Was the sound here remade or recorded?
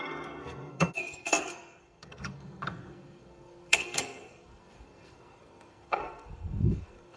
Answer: remade